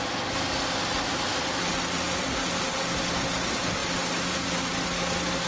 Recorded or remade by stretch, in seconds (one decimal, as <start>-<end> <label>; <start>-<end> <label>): 0.0-5.5 recorded